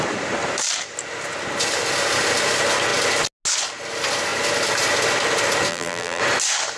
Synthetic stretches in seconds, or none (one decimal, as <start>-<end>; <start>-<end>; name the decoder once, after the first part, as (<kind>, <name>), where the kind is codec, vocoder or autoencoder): 5.7-6.2 (vocoder, BigVGAN v2)

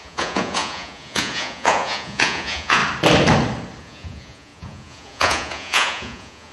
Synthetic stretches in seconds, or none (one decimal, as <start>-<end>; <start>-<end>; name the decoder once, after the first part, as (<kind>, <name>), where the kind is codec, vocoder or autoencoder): 0.0-2.8 (vocoder, Vocos); 3.8-6.5

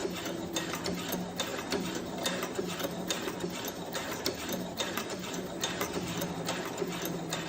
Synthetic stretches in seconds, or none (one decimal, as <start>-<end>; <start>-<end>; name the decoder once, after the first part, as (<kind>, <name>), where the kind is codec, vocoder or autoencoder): 0.0-0.8 (vocoder, BigVGAN v2); 1.5-5.5

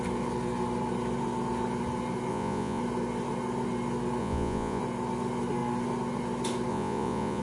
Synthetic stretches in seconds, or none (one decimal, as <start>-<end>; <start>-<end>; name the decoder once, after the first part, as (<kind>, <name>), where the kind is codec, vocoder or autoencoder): 2.3-2.8 (vocoder, Vocos); 4.2-4.8; 6.7-7.4

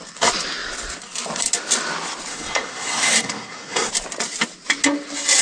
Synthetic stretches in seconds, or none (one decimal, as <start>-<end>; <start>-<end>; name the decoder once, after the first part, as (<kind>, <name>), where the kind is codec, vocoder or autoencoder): 2.3-3.9 (codec, SNAC)